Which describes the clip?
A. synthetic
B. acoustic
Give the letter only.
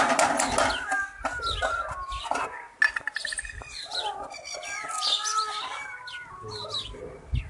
B